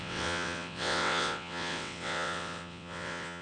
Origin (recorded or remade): remade